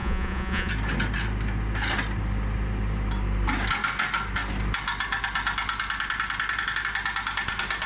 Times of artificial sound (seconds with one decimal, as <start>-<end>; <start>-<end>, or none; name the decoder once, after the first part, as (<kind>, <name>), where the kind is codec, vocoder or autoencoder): 0.0-0.7 (vocoder, Vocos)